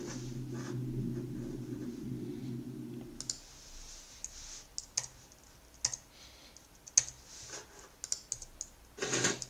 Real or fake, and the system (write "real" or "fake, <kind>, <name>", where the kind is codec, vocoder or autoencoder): real